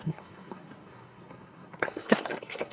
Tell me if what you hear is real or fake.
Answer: fake